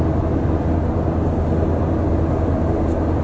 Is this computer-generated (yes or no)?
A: no